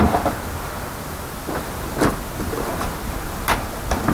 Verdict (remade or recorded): remade